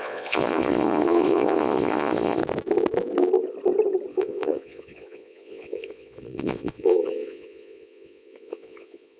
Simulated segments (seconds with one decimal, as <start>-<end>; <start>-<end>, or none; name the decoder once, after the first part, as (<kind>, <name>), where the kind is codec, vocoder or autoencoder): 0.0-2.4 (vocoder, Vocos); 4.1-9.2